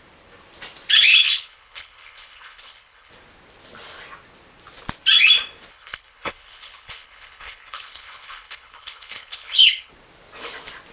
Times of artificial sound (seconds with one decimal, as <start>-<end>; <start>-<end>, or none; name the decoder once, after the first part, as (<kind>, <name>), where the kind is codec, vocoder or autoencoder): 1.1-3.1 (codec, HILCodec); 5.7-9.9